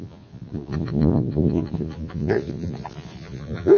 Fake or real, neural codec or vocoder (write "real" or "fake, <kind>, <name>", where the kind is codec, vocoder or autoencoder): fake, vocoder, Vocos